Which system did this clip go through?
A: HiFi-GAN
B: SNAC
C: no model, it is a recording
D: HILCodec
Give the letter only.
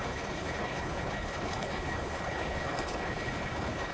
D